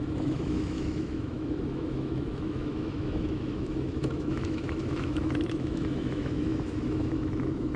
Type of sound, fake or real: fake